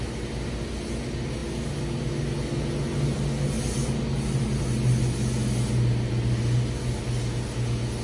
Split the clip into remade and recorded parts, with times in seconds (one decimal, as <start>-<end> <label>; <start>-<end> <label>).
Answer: 0.0-8.0 recorded